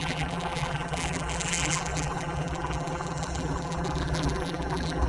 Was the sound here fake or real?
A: fake